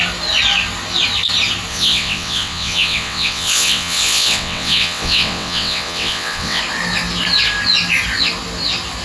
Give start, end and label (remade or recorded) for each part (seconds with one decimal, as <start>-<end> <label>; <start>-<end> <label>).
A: 0.0-1.7 recorded; 1.7-6.6 remade; 6.6-9.0 recorded